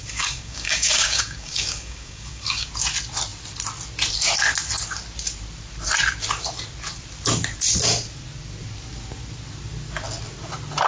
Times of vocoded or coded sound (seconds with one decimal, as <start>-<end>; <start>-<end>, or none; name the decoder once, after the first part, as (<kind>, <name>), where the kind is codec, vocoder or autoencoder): 0.0-2.7 (codec, DAC)